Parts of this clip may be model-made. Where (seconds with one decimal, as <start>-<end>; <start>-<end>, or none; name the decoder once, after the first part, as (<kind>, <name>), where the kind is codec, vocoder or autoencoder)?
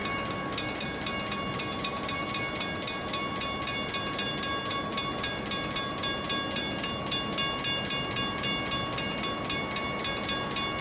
none